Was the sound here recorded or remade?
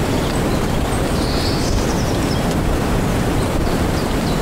remade